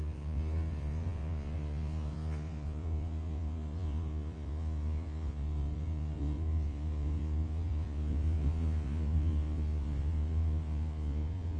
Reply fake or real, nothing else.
fake